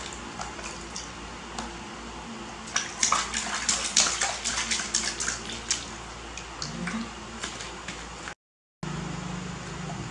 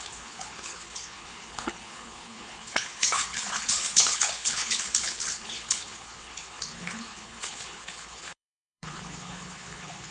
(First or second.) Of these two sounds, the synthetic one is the second